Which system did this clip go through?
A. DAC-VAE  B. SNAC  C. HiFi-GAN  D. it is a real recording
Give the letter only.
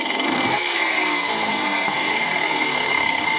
B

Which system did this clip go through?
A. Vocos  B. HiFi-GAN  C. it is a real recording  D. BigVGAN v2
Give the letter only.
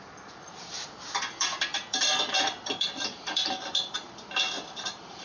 D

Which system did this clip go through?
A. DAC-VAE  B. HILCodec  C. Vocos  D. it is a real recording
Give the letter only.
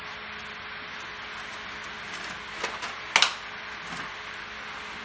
D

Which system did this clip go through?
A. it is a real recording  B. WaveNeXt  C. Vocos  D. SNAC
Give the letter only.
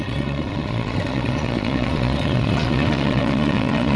C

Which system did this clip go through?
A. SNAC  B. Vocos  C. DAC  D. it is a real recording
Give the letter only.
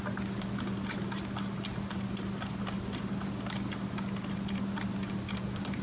D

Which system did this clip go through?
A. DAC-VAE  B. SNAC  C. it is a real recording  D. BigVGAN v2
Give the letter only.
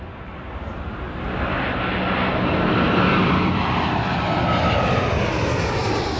C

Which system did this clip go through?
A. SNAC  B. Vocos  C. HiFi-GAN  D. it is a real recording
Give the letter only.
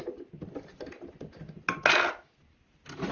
D